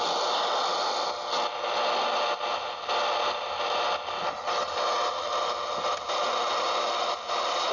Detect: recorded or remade recorded